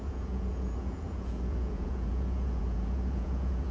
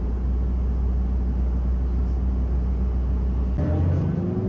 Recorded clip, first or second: second